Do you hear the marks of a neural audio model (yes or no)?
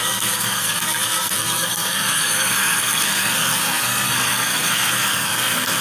yes